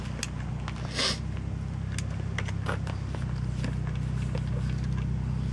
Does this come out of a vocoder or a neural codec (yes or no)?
no